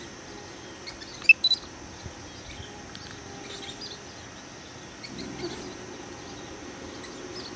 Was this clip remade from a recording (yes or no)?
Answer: no